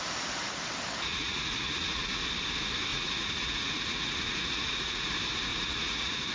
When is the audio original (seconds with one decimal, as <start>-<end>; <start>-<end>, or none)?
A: 0.0-1.1; 2.2-2.9; 5.1-5.5